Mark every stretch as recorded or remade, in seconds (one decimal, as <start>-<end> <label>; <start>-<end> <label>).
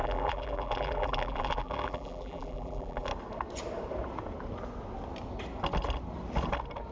0.0-3.1 remade; 3.1-6.9 recorded